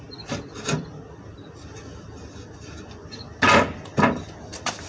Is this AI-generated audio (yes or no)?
no